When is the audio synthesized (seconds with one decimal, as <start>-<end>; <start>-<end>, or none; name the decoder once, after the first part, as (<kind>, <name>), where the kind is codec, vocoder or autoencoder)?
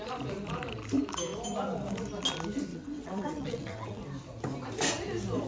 2.7-4.0 (vocoder, WaveNeXt)